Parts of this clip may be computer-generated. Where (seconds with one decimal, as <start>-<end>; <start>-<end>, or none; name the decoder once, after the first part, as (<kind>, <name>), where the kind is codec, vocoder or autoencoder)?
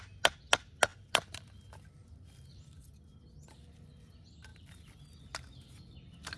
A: 0.9-2.4 (vocoder, BigVGAN v2); 4.5-5.2